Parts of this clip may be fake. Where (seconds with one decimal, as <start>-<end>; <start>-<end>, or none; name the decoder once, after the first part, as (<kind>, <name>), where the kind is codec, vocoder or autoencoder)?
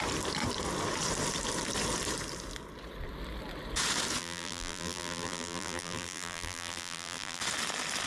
4.2-7.4 (vocoder, BigVGAN v2)